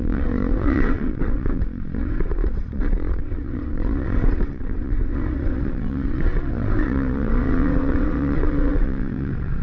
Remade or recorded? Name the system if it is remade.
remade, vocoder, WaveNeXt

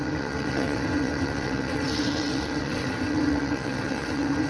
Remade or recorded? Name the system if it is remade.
remade, vocoder, WaveNeXt